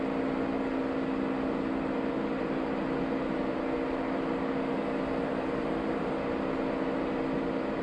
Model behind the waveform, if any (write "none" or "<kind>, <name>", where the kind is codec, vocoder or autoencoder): none